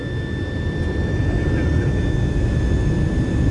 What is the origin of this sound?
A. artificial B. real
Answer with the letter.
B